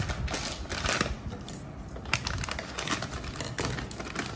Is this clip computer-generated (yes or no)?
no